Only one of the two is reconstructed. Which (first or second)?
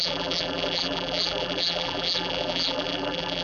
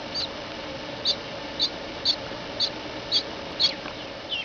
first